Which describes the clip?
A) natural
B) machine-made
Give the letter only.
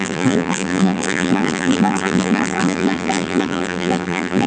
B